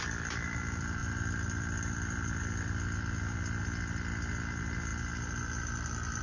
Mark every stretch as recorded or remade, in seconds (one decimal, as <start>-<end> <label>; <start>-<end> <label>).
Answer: 0.0-6.2 remade